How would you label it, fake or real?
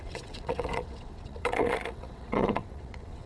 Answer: fake